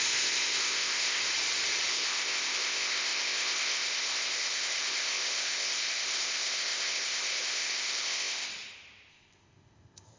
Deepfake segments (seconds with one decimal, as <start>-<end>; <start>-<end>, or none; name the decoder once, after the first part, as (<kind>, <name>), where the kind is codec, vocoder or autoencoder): 0.0-1.2 (codec, ZipCodec); 1.9-8.5; 9.1-10.2